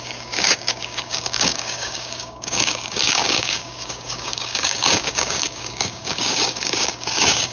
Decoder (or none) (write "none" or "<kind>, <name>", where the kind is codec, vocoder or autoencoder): codec, DAC